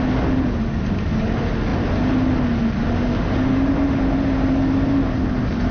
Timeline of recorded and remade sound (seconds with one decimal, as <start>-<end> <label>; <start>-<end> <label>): 0.0-5.7 recorded